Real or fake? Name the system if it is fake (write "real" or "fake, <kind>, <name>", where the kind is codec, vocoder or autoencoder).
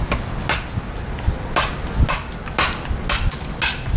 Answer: real